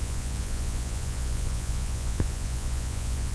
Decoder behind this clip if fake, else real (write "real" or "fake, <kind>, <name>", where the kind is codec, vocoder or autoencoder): fake, vocoder, Vocos